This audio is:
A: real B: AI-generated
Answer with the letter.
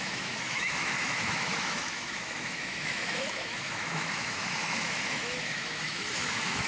B